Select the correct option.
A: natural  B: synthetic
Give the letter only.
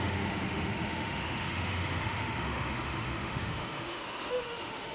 B